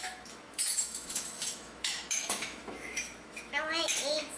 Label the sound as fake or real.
fake